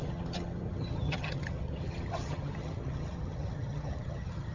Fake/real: fake